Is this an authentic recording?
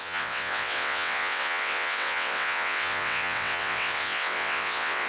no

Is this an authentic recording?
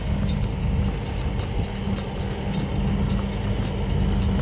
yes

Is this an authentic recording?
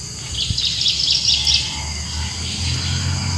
yes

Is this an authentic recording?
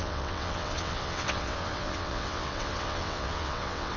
no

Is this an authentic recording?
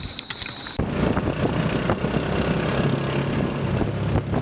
yes